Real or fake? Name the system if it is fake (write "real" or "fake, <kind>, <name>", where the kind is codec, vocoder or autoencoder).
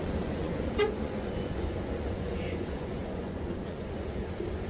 fake, vocoder, Vocos